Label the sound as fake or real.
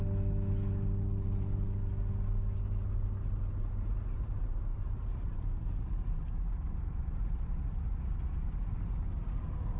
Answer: real